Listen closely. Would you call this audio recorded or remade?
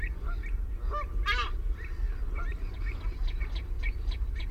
recorded